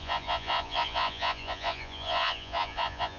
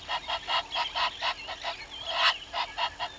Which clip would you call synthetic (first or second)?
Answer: first